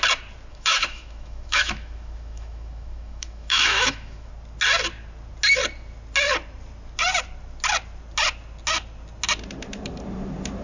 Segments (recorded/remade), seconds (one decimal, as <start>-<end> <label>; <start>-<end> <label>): 0.0-0.5 recorded; 0.5-4.3 remade; 4.3-10.6 recorded